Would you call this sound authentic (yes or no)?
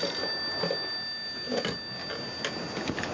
yes